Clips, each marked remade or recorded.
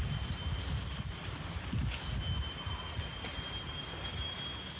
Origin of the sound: recorded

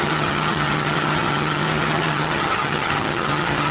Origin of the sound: remade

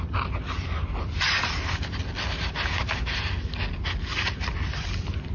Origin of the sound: recorded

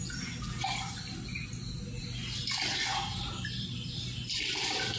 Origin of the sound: recorded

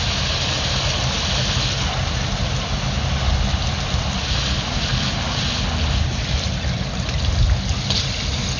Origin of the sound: recorded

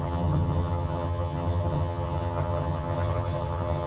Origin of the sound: remade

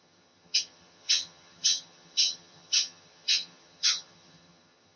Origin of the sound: remade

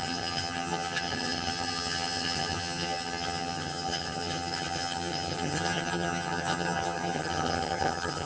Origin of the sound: remade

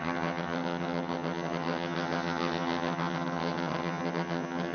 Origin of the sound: remade